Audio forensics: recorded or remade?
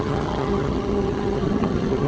remade